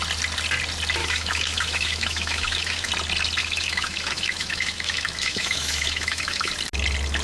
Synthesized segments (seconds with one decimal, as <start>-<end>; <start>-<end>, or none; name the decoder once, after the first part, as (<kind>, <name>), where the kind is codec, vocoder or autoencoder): 1.0-2.9 (autoencoder, DAC-VAE); 3.4-6.5